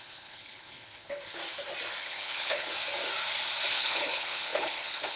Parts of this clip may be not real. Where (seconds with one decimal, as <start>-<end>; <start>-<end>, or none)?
0.0-1.4; 2.0-2.7; 3.7-5.2